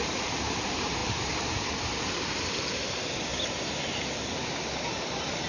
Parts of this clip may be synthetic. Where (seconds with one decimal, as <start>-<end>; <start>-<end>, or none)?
0.0-3.3; 4.8-5.5